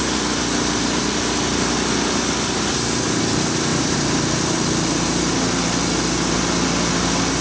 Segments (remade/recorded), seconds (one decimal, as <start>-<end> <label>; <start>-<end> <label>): 0.0-7.4 recorded